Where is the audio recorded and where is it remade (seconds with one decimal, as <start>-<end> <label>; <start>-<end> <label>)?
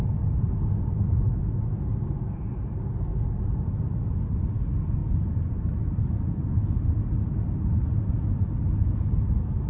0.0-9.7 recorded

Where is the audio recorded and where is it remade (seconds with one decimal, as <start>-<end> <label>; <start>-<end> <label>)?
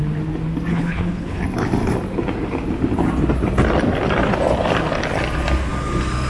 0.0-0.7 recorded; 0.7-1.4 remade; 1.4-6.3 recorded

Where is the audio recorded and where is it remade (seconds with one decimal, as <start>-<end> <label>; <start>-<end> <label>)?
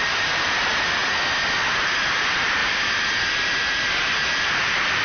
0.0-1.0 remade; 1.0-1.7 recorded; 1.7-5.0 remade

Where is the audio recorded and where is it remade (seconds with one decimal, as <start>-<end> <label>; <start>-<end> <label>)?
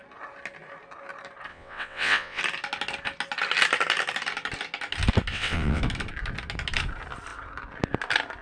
0.0-1.5 recorded; 1.5-2.4 remade; 2.4-5.3 recorded; 5.3-5.8 remade; 5.8-8.4 recorded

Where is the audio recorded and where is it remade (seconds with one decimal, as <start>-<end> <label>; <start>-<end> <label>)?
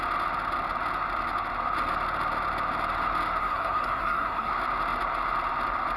0.0-3.4 recorded; 3.4-4.5 remade; 4.5-6.0 recorded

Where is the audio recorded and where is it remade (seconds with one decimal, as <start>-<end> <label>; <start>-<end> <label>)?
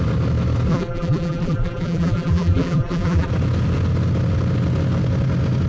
0.0-0.7 recorded; 0.7-3.3 remade; 3.3-5.7 recorded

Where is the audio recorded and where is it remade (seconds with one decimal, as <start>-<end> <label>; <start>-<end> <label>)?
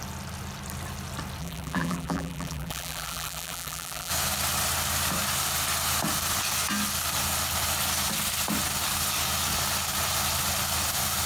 0.0-1.4 recorded; 1.4-4.1 remade; 4.1-11.3 recorded